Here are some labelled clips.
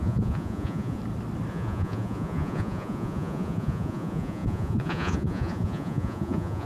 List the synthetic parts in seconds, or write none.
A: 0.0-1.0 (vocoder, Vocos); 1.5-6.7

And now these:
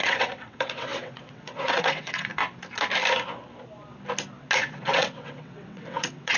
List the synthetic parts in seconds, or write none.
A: 0.0-2.4 (vocoder, WaveNeXt); 4.7-6.4